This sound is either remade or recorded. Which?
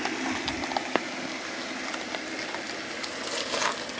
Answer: recorded